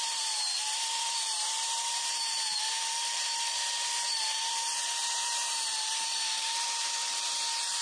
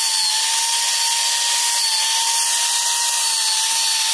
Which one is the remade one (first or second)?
first